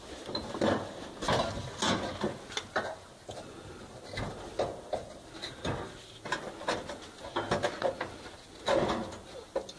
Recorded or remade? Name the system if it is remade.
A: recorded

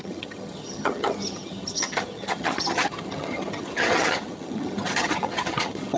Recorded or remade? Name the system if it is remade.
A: remade, vocoder, HiFi-GAN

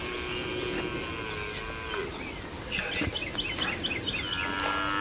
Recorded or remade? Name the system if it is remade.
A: recorded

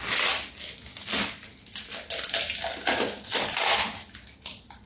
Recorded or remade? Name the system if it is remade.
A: recorded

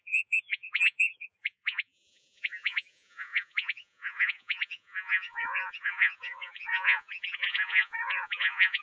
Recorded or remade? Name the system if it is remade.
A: remade, vocoder, Vocos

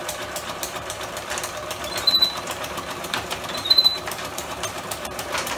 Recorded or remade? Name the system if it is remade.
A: remade, vocoder, BigVGAN v2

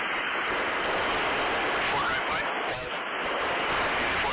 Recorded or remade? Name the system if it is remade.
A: recorded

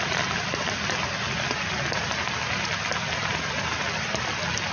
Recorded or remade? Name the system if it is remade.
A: recorded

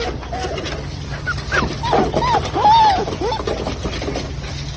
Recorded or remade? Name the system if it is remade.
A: recorded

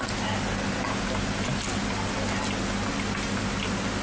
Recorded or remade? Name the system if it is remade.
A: recorded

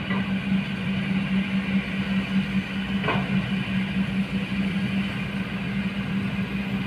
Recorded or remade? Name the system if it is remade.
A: recorded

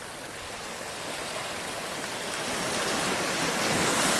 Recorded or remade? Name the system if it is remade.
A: recorded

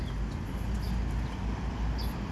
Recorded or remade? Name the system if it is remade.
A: recorded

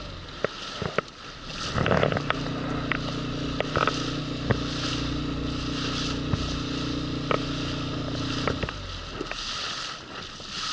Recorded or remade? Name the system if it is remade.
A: recorded